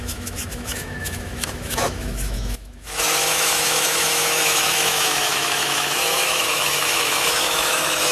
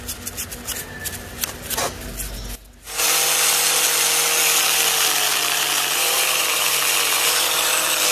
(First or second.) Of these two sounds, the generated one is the first